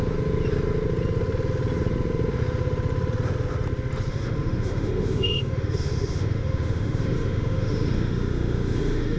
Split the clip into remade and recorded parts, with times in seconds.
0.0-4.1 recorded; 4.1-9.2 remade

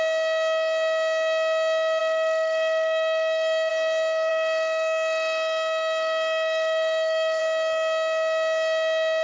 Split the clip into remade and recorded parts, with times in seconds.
0.0-2.0 recorded; 2.0-3.7 remade; 3.7-4.3 recorded; 4.3-7.4 remade; 7.4-9.2 recorded